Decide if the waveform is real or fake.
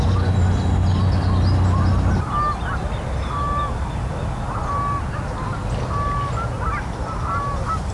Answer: real